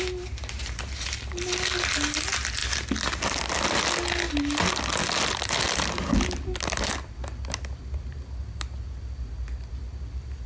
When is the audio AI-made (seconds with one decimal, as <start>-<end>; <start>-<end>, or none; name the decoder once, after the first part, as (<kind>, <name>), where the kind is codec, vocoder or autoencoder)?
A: none